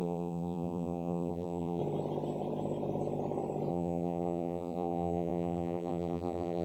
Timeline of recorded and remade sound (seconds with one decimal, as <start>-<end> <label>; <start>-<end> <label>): 0.0-1.8 remade; 1.8-3.7 recorded; 3.7-6.6 remade